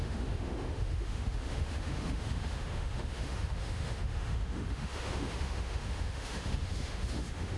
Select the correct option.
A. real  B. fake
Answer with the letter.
B